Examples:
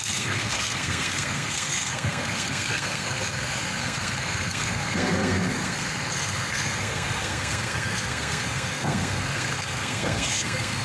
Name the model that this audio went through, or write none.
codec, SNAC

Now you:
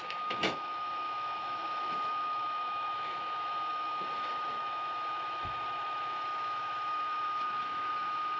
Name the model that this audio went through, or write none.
autoencoder, DAC-VAE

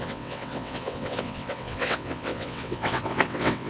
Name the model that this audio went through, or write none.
vocoder, WaveNeXt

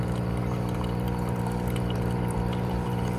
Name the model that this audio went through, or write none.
vocoder, BigVGAN v2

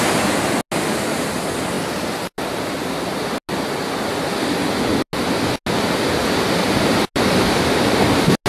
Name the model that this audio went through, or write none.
none